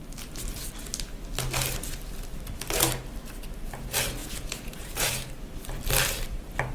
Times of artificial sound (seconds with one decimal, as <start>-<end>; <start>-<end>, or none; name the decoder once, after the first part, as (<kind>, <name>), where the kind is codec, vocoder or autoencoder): 4.2-5.1 (vocoder, Vocos)